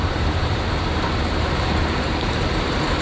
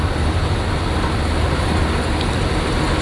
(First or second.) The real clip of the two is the second